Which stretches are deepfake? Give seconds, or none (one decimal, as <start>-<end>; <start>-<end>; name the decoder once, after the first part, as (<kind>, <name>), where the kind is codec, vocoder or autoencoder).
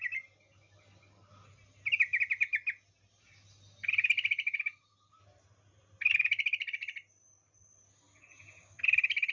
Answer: none